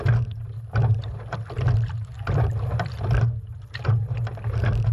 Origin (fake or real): real